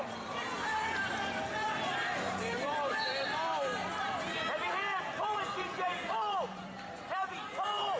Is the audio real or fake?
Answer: fake